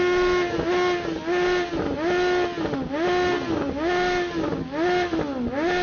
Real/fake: real